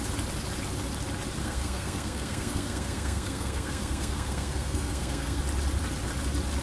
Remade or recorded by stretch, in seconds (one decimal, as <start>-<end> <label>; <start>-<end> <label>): 0.0-1.4 recorded; 1.4-5.4 remade; 5.4-6.6 recorded